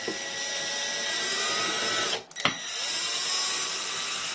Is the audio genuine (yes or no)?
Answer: yes